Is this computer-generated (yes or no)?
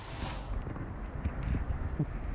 no